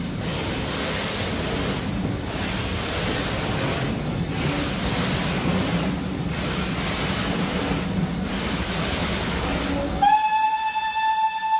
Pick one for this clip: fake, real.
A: real